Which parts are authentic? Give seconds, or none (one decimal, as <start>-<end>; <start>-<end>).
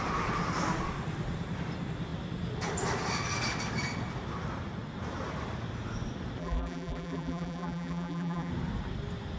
0.0-6.4; 8.5-9.4